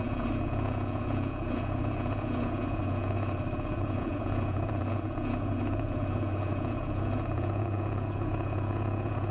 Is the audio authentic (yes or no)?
no